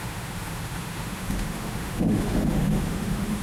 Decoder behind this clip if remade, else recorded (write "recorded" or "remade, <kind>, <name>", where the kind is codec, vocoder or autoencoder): remade, autoencoder, DAC-VAE